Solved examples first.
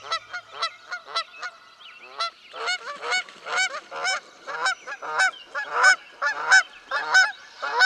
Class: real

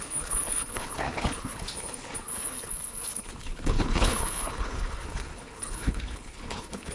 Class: fake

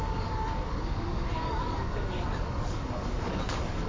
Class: fake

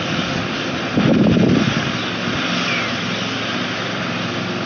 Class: real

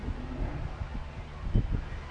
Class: real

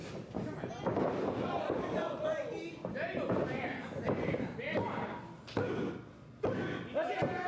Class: real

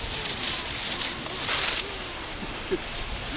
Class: real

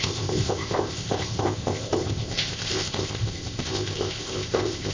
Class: fake